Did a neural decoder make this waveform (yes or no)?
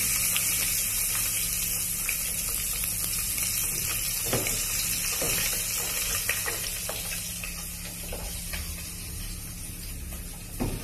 no